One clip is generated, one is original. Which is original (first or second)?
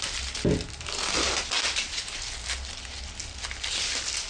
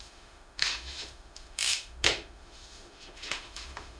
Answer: first